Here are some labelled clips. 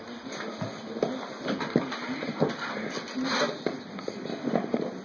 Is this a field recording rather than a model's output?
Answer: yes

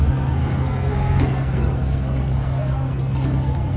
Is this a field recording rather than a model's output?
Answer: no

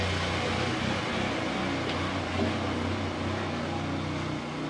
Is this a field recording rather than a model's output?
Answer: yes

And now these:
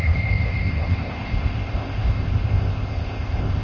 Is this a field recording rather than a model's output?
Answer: no